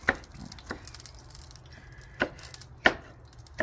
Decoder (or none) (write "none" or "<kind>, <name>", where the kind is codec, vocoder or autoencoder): none